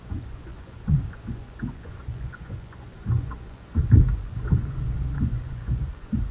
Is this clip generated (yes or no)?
yes